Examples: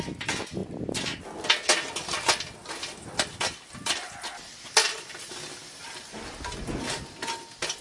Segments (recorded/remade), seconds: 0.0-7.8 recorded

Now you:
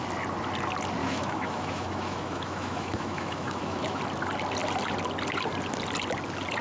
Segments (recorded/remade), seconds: 0.0-1.0 recorded; 1.0-4.0 remade; 4.0-6.6 recorded

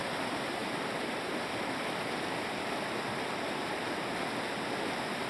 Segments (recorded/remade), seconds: 0.0-5.3 recorded

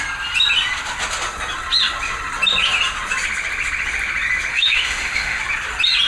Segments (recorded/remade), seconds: 0.0-4.5 recorded; 4.5-5.4 remade; 5.4-6.1 recorded

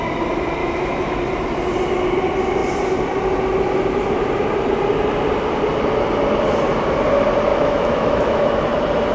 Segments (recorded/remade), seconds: 0.0-0.6 recorded; 0.6-1.2 remade; 1.2-7.5 recorded; 7.5-8.6 remade; 8.6-9.1 recorded

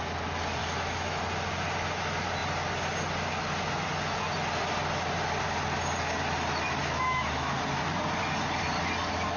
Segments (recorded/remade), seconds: 0.0-0.6 recorded; 0.6-1.2 remade; 1.2-6.8 recorded; 6.8-7.6 remade; 7.6-9.4 recorded